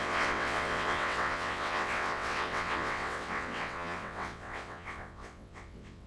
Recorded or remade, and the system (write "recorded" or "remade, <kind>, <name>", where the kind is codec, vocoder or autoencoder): remade, vocoder, WaveNeXt